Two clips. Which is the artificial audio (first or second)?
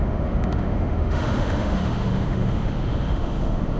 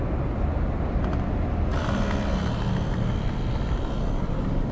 first